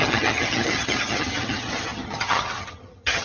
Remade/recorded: remade